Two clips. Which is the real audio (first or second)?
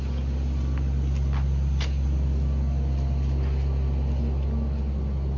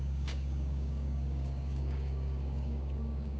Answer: first